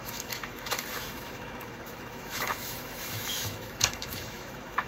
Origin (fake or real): fake